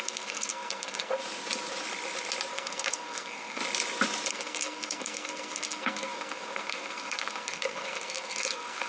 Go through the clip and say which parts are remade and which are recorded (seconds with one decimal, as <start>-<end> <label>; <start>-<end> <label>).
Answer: 0.0-1.2 remade; 1.2-2.5 recorded; 2.5-3.6 remade; 3.6-4.3 recorded; 4.3-8.9 remade